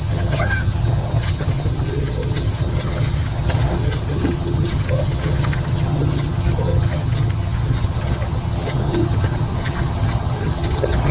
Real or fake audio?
fake